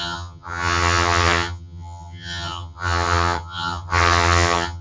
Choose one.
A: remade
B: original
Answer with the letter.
A